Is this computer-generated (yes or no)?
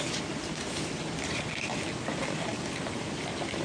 no